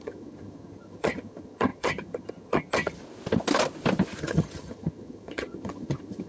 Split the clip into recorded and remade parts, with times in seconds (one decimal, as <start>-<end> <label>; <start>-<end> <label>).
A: 0.0-3.0 remade; 3.0-4.2 recorded; 4.2-6.3 remade